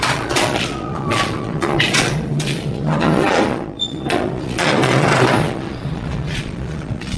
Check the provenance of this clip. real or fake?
fake